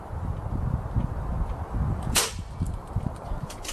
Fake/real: fake